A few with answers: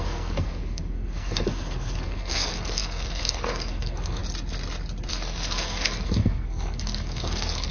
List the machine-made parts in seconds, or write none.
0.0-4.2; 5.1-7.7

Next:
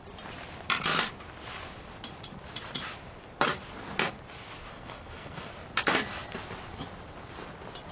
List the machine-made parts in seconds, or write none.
4.7-5.5

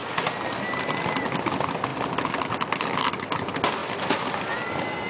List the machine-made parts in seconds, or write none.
none

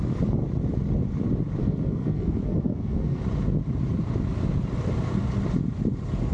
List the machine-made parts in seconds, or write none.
1.6-3.2

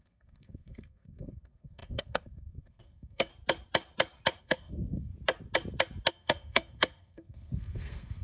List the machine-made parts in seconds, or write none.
0.0-3.3; 4.4-5.1; 6.1-8.2

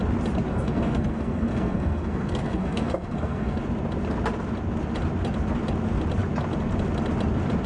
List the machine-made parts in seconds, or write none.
0.5-3.6